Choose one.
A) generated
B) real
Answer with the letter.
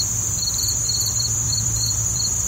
A